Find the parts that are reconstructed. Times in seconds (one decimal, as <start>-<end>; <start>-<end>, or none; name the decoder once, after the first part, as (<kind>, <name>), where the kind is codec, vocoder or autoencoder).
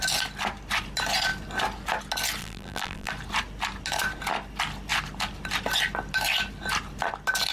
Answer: 2.4-3.1 (vocoder, BigVGAN v2)